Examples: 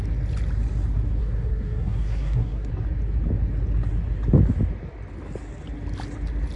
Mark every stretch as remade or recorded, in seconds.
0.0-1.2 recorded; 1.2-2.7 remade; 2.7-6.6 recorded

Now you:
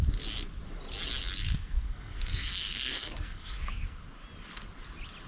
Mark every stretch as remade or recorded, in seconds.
0.0-1.4 recorded; 1.4-4.0 remade; 4.0-5.3 recorded

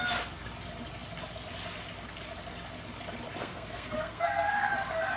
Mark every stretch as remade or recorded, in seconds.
0.0-3.4 recorded; 3.4-4.7 remade; 4.7-5.2 recorded

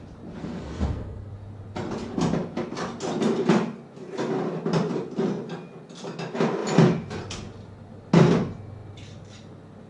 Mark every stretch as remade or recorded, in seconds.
0.0-0.4 recorded; 0.4-1.3 remade; 1.3-9.9 recorded

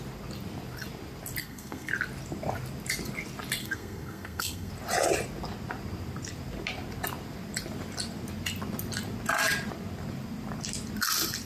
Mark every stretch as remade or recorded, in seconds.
0.0-1.4 recorded; 1.4-1.9 remade; 1.9-3.6 recorded; 3.6-4.7 remade; 4.7-11.5 recorded

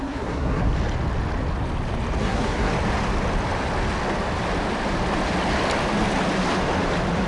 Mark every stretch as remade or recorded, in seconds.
0.0-0.7 remade; 0.7-2.2 recorded; 2.2-2.7 remade; 2.7-7.3 recorded

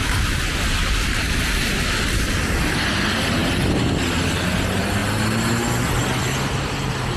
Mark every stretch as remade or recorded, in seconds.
0.0-7.2 recorded